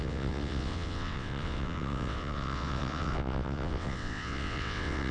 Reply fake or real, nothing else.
fake